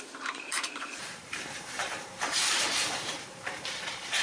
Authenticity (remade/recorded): remade